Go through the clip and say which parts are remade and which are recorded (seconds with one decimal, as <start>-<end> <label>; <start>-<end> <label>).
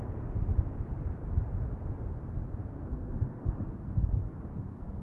0.0-2.6 recorded; 2.6-5.0 remade